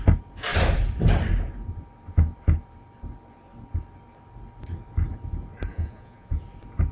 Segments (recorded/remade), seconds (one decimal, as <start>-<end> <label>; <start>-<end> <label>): 0.0-5.7 recorded; 5.7-6.4 remade; 6.4-6.9 recorded